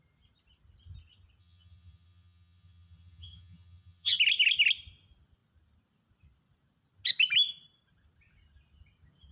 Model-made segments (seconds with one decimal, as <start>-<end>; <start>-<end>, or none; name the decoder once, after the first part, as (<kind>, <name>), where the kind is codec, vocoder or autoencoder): 1.4-4.2 (vocoder, HiFi-GAN)